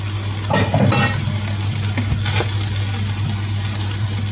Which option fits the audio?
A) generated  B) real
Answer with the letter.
B